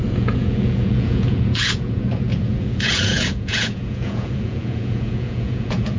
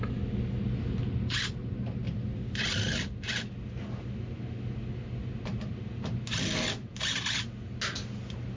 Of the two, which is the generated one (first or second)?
first